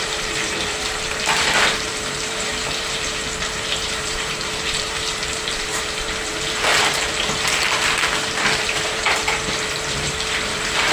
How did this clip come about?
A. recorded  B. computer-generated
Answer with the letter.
B